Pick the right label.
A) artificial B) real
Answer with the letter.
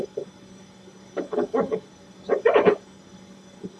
A